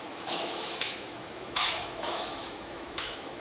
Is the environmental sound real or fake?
fake